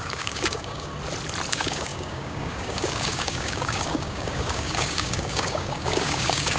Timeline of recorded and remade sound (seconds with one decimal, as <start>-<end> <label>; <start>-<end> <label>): 0.0-0.9 remade; 0.9-1.5 recorded; 1.5-6.6 remade